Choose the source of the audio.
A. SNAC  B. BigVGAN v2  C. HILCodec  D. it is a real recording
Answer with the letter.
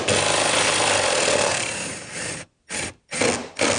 D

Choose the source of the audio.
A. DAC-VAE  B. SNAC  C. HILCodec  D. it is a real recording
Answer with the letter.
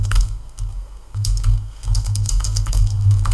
B